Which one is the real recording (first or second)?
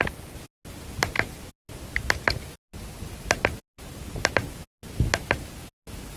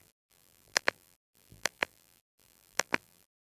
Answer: first